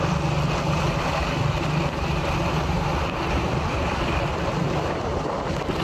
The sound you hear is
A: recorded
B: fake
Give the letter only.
A